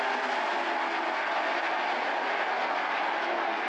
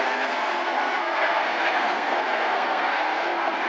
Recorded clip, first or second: first